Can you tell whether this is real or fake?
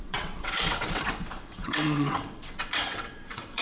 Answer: fake